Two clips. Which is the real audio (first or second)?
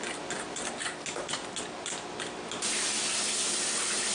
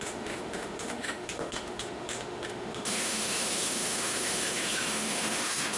first